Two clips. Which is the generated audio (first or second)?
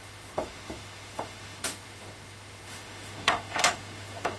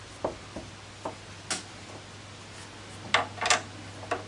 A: first